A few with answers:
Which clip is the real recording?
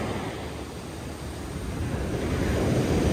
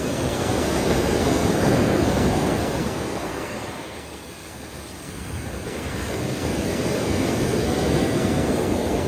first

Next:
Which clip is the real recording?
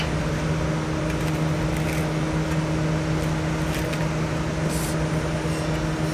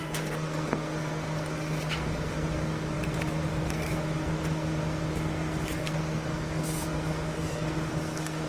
first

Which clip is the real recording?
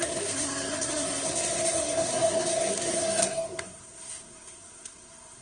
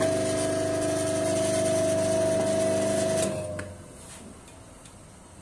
second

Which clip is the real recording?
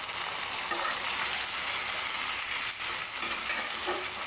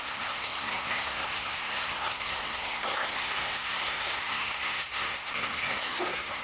first